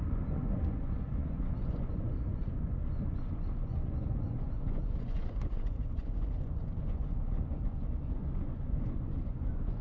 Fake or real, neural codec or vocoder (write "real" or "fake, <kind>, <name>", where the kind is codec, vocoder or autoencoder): fake, vocoder, Vocos